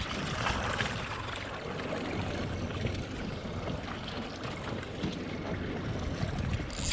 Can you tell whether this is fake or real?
real